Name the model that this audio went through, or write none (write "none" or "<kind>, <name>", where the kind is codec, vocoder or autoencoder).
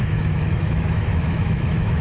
autoencoder, DAC-VAE